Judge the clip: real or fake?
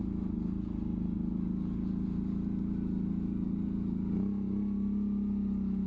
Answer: real